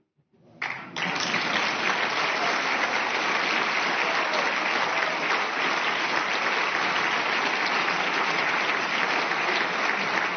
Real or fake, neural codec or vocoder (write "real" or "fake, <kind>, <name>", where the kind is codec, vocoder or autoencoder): real